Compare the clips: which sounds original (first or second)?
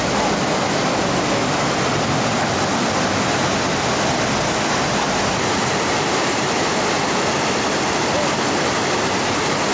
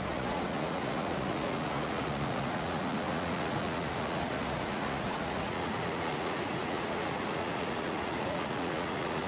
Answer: first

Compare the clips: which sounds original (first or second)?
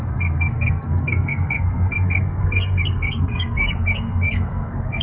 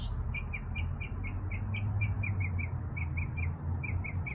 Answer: second